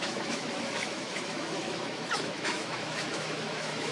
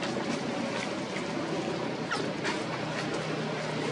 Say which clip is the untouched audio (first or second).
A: second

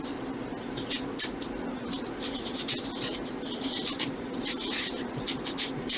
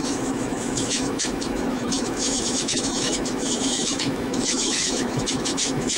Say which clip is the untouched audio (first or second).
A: first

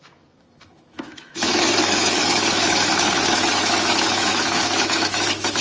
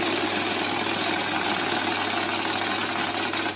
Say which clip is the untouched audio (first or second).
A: second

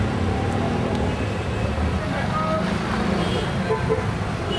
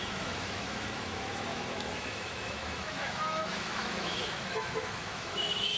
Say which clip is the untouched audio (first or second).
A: first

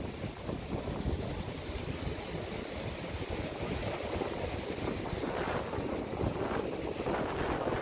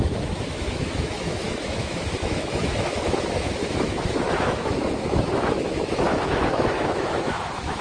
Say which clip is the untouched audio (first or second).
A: first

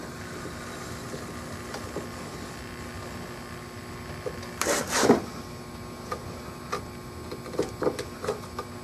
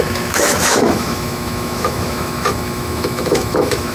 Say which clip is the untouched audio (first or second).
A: first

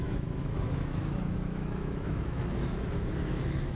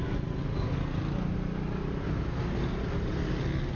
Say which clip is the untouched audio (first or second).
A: second